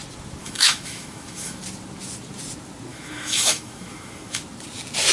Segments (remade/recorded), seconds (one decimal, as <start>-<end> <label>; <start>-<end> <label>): 0.0-0.4 recorded; 0.4-1.6 remade; 1.6-2.9 recorded; 2.9-4.4 remade; 4.4-5.1 recorded